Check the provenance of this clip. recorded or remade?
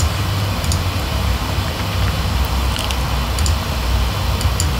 recorded